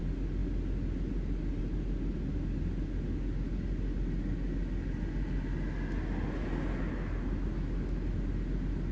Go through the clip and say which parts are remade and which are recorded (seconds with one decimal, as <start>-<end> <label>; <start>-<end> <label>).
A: 0.0-8.9 recorded